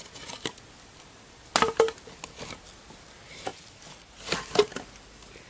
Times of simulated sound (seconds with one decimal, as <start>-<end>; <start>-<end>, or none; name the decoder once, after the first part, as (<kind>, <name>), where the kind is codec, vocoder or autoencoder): none